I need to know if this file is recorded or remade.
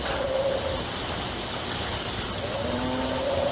recorded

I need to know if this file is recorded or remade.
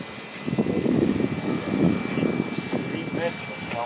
recorded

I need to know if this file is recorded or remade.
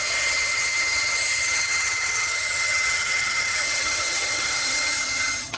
remade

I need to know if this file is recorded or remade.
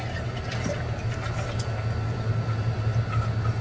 recorded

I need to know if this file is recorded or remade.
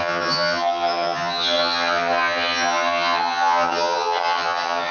remade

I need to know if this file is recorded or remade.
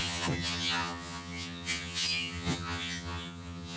remade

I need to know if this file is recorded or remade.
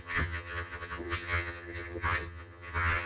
remade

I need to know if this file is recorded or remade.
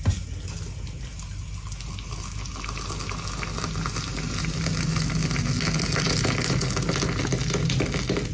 recorded